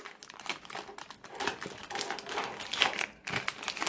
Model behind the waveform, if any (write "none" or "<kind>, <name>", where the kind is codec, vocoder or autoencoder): none